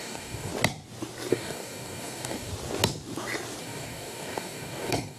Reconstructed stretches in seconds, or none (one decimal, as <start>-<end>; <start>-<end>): 0.0-0.5; 1.3-2.5; 3.6-5.2